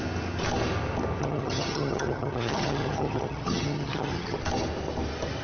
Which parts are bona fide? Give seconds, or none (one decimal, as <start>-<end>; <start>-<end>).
0.0-1.2; 4.4-5.4